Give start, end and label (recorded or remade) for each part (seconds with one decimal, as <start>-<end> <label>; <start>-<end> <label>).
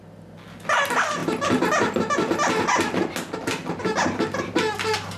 0.0-5.2 recorded